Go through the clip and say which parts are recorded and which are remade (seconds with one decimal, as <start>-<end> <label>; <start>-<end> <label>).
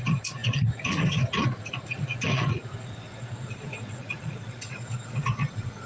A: 0.0-5.9 remade